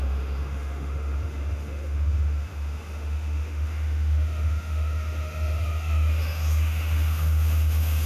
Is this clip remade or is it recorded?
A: remade